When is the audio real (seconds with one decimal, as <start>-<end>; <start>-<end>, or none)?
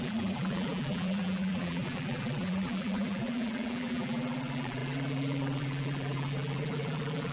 none